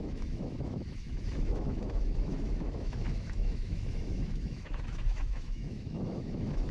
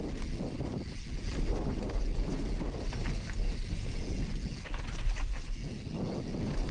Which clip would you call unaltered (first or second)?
second